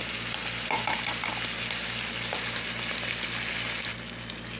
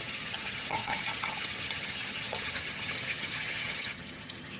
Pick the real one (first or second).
first